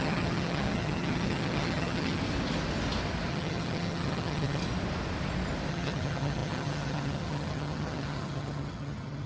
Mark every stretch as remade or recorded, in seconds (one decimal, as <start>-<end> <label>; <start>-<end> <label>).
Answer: 0.0-2.2 remade; 2.2-3.3 recorded; 3.3-4.6 remade; 4.6-5.7 recorded; 5.7-9.3 remade